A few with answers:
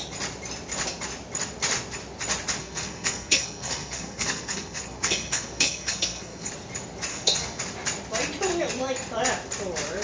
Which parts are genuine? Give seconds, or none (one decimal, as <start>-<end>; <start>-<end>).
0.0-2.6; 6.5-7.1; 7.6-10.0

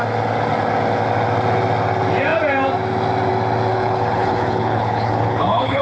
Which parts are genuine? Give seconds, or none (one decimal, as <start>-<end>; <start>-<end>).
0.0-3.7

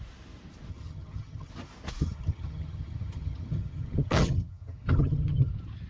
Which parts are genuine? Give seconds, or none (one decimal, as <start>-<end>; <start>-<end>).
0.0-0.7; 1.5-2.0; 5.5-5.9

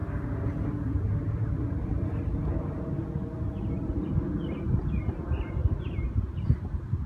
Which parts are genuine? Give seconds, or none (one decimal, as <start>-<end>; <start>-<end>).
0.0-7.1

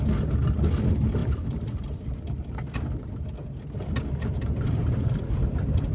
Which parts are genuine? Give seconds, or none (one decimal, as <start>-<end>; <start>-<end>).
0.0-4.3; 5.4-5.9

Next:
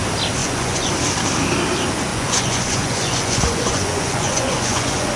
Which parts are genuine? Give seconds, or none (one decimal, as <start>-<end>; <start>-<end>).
0.0-0.4; 0.9-2.1